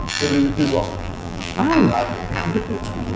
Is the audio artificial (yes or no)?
yes